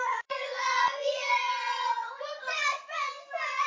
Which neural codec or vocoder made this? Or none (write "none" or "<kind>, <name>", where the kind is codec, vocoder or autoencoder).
vocoder, Vocos